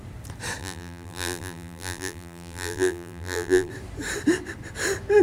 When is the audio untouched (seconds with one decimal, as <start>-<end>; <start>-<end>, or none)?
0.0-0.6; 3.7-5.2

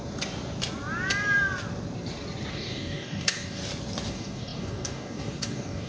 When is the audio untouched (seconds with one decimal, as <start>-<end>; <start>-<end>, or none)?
0.0-2.5; 3.6-4.1

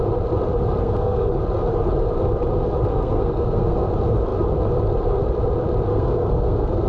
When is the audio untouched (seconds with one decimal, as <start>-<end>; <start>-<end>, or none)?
0.0-0.8; 1.4-2.9; 3.9-5.9

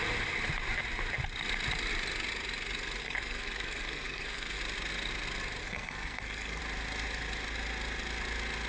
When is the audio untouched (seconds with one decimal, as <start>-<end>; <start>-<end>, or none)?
0.0-3.0; 4.6-5.6; 6.6-8.7

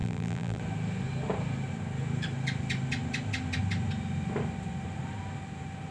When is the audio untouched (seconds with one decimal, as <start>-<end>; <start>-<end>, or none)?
0.6-5.9

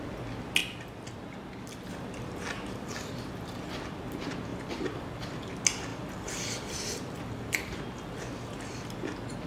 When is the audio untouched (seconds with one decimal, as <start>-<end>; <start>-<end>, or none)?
0.0-4.5; 5.4-5.9; 7.8-9.5

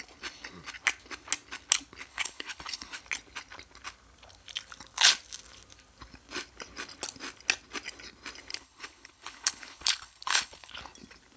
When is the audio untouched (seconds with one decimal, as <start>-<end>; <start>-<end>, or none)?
0.0-2.1; 3.0-8.5; 10.7-11.4